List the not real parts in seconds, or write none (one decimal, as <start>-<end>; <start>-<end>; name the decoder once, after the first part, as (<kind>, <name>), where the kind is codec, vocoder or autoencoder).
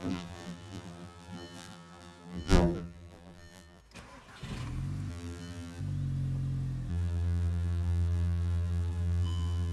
0.0-3.8 (vocoder, BigVGAN v2); 5.1-5.8; 6.9-9.7